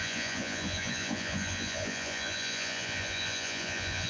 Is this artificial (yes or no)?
yes